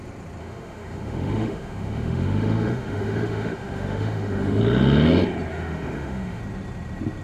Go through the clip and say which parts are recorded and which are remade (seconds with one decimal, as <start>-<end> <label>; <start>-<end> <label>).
0.0-0.4 recorded; 0.4-4.6 remade; 4.6-5.5 recorded; 5.5-6.4 remade; 6.4-7.2 recorded